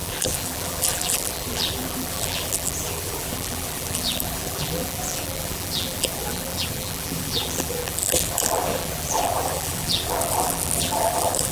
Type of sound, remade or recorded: remade